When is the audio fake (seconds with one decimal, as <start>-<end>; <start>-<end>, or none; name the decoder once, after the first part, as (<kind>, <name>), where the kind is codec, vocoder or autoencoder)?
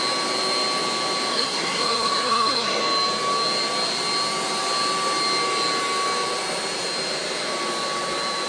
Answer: 1.3-2.8 (codec, SNAC)